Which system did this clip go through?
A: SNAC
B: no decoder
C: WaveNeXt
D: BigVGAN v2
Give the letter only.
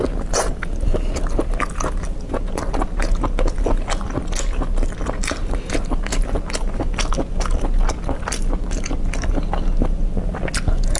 B